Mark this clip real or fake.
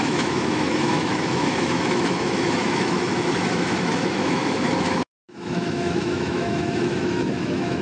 fake